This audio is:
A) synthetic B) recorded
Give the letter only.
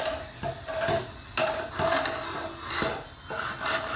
B